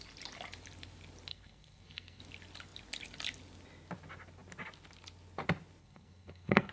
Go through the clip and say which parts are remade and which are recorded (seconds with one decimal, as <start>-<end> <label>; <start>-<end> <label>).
0.0-1.3 recorded; 1.3-2.2 remade; 2.2-5.8 recorded; 5.8-6.7 remade